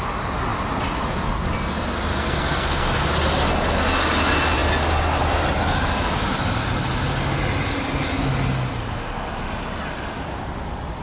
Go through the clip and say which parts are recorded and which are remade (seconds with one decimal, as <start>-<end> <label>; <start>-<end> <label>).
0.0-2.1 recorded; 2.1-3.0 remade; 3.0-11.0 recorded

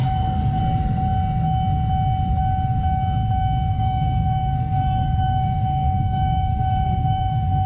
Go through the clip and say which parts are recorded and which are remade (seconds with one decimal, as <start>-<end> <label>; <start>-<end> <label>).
0.0-0.6 remade; 0.6-3.7 recorded; 3.7-7.7 remade

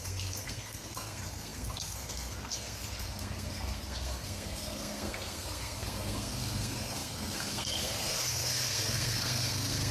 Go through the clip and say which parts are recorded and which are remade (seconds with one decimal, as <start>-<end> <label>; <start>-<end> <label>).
0.0-9.9 remade

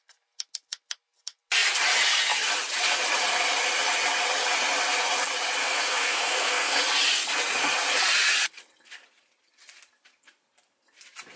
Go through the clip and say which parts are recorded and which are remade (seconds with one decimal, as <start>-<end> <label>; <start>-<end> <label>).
0.0-5.6 recorded; 5.6-6.8 remade; 6.8-11.4 recorded

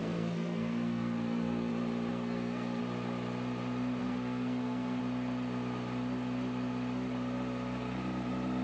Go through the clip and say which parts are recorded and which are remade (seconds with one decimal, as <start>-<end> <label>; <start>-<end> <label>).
0.0-1.7 remade; 1.7-2.1 recorded; 2.1-2.8 remade; 2.8-4.0 recorded; 4.0-5.0 remade; 5.0-8.6 recorded

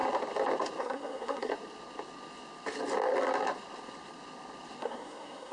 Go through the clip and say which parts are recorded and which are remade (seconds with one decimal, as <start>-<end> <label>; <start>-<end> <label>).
0.0-0.8 recorded; 0.8-1.5 remade; 1.5-4.8 recorded; 4.8-5.5 remade